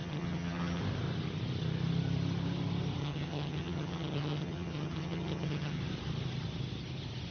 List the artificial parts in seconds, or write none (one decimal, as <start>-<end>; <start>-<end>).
0.0-0.8; 3.0-5.8

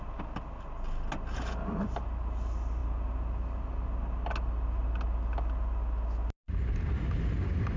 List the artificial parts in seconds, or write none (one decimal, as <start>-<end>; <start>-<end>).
none